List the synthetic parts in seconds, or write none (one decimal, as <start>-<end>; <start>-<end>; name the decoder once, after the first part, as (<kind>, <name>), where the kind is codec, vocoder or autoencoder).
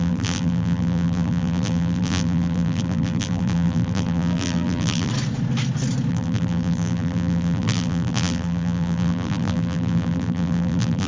0.0-5.1 (vocoder, BigVGAN v2); 6.1-11.1